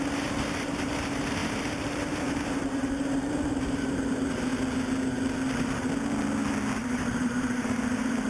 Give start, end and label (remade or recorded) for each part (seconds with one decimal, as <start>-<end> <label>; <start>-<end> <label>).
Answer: 0.0-4.5 remade; 4.5-6.8 recorded; 6.8-8.3 remade